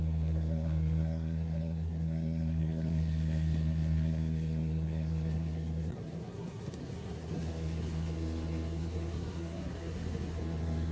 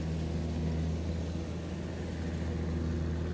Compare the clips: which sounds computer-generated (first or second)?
first